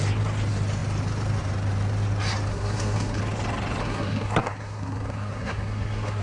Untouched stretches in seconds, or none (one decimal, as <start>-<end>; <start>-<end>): 0.0-2.5; 3.2-3.8